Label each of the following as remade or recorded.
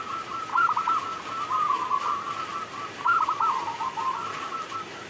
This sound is recorded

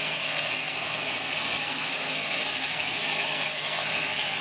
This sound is remade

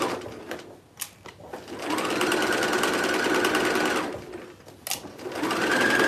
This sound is recorded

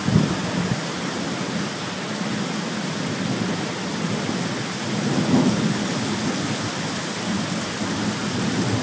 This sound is recorded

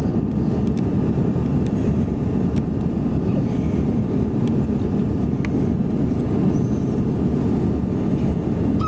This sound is recorded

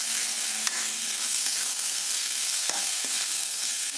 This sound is remade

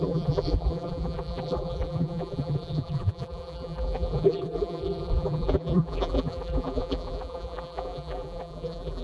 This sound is remade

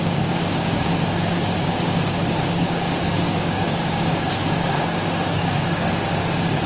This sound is remade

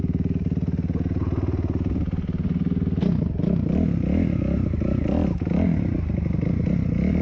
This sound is recorded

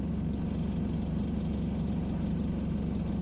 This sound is remade